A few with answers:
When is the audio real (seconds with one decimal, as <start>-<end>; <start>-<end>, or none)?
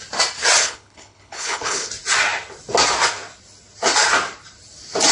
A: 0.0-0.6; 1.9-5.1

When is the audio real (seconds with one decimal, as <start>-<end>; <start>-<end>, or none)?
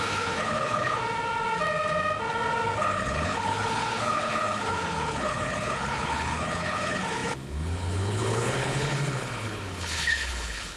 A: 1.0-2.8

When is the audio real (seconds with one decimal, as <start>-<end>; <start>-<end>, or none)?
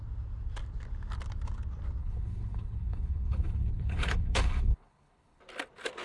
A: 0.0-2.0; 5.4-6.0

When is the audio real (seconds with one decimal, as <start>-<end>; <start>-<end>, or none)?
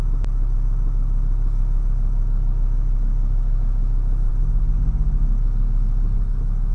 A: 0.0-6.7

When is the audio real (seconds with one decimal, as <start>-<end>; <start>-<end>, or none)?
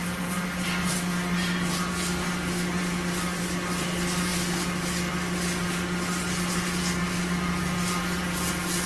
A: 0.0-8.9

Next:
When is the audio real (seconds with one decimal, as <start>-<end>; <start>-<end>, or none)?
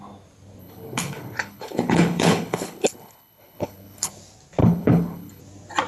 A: 0.0-0.6; 4.1-4.6; 5.4-5.9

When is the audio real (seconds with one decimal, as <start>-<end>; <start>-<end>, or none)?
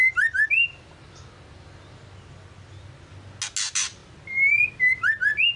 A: 0.0-5.6